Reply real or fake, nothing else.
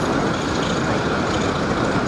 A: real